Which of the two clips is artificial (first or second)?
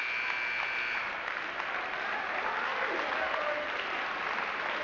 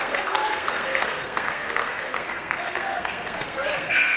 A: second